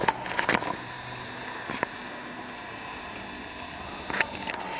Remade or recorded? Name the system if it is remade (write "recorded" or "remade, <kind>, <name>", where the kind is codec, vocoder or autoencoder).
recorded